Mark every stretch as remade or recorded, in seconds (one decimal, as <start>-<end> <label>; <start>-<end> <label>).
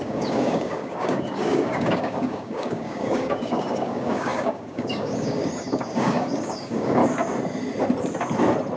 0.0-7.0 remade; 7.0-8.8 recorded